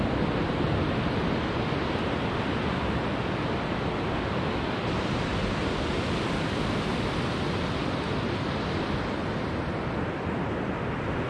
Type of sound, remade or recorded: recorded